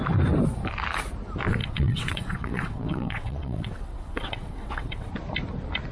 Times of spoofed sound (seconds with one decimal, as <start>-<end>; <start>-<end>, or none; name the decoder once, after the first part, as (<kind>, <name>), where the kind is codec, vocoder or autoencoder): 1.6-5.1 (vocoder, WaveNeXt)